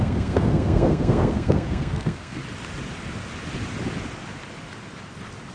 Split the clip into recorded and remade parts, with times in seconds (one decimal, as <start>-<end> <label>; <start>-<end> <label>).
0.0-2.4 remade; 2.4-5.5 recorded